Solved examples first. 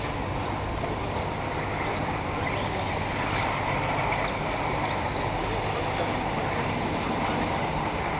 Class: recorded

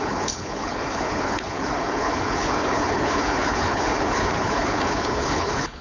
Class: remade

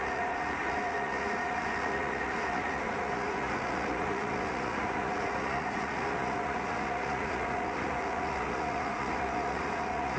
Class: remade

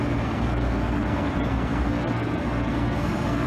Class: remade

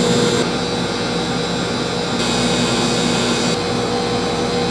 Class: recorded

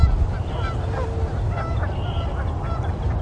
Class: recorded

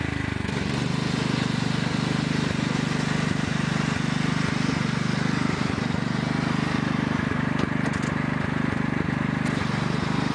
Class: recorded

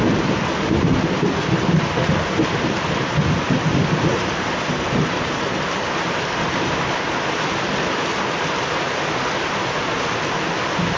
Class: remade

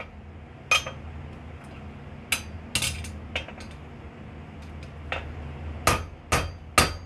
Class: recorded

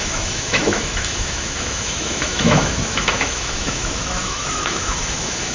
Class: remade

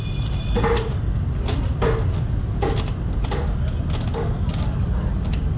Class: recorded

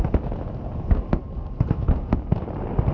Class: recorded